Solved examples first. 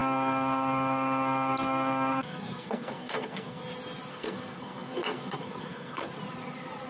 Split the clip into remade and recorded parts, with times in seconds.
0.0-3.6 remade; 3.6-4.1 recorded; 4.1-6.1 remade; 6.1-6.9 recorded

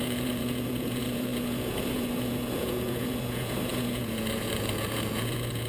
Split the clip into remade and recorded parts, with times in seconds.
0.0-5.7 remade

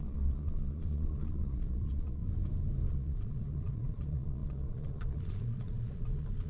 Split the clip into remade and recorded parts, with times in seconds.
0.0-2.2 remade; 2.2-2.9 recorded; 2.9-6.5 remade